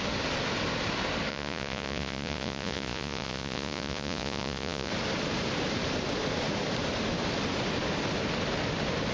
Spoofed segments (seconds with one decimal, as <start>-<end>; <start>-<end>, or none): 1.3-4.9